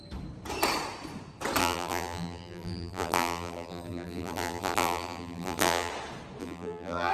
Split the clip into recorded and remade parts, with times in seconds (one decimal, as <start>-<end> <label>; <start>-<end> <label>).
0.0-1.6 recorded; 1.6-5.9 remade; 5.9-6.4 recorded; 6.4-7.1 remade